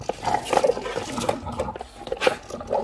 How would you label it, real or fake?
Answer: real